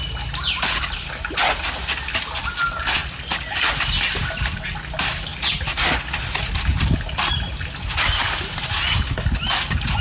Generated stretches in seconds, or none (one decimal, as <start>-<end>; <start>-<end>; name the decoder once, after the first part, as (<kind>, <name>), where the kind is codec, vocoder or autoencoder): none